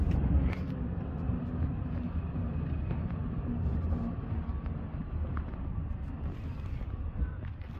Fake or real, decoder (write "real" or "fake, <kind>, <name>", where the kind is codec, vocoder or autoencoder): real